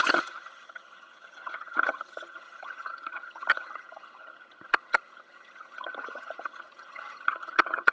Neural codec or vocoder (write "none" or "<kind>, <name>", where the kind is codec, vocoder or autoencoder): vocoder, HiFi-GAN